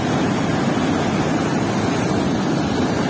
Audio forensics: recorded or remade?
recorded